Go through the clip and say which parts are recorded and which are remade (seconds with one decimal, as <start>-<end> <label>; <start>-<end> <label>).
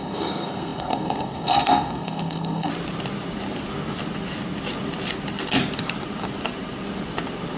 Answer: 0.0-2.7 remade; 2.7-7.6 recorded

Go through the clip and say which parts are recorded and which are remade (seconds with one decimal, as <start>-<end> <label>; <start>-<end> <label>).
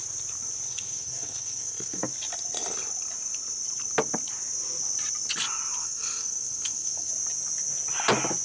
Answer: 0.0-0.7 recorded; 0.7-2.1 remade; 2.1-5.8 recorded; 5.8-7.1 remade; 7.1-8.4 recorded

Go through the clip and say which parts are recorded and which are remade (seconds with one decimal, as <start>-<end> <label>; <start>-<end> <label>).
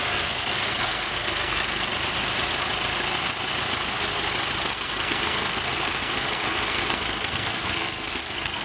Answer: 0.0-1.9 remade; 1.9-4.6 recorded; 4.6-8.6 remade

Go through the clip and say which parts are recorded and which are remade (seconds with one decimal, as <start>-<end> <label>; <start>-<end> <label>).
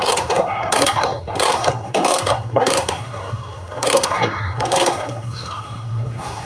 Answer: 0.0-6.5 remade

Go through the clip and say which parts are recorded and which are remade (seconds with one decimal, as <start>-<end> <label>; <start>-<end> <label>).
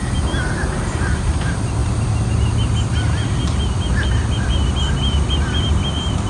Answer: 0.0-6.3 recorded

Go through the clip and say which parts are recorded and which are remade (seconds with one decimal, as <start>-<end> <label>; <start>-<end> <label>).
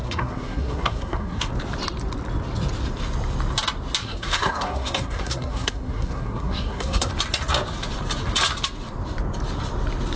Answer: 0.0-1.5 remade; 1.5-4.0 recorded; 4.0-7.1 remade; 7.1-10.2 recorded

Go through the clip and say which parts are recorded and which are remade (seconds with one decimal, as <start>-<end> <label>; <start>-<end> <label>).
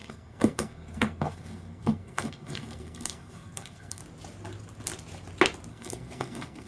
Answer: 0.0-4.0 remade; 4.0-5.7 recorded; 5.7-6.7 remade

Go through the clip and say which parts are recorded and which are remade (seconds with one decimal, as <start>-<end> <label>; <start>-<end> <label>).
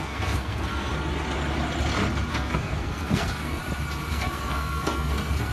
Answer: 0.0-0.9 remade; 0.9-2.3 recorded; 2.3-3.6 remade; 3.6-4.1 recorded; 4.1-5.5 remade